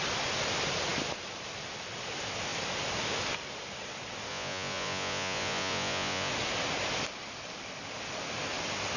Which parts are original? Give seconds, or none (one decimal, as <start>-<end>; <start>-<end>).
0.0-4.3; 6.3-9.0